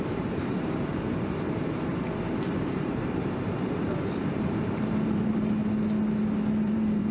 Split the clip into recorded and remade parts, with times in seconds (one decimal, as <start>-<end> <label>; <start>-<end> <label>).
0.0-1.9 remade; 1.9-2.6 recorded; 2.6-5.6 remade; 5.6-6.6 recorded; 6.6-7.1 remade